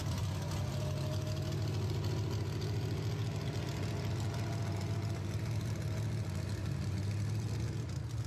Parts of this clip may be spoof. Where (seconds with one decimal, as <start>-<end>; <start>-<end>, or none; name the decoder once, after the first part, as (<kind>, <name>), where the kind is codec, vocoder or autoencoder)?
6.6-7.1 (vocoder, BigVGAN v2)